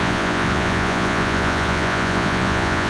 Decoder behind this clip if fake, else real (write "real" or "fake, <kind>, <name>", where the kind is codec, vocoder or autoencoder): fake, vocoder, Vocos